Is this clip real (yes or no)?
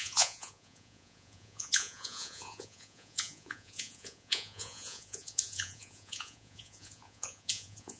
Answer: no